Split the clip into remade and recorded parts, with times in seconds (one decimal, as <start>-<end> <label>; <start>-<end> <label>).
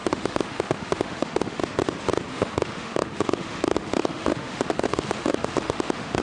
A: 0.0-1.6 remade; 1.6-2.3 recorded; 2.3-6.2 remade